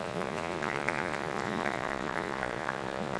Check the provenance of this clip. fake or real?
fake